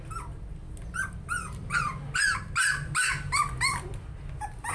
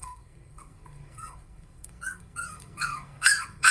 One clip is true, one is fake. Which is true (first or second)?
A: first